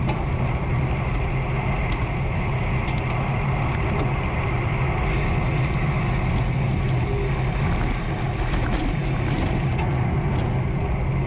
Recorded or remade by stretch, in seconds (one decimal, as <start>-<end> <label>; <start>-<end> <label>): 0.0-11.3 recorded